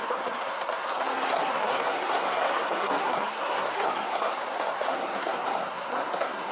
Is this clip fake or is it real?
fake